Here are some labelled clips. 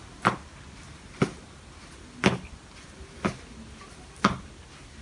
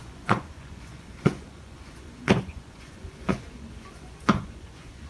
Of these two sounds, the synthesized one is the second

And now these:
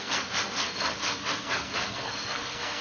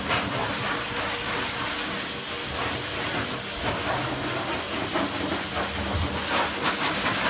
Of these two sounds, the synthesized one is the first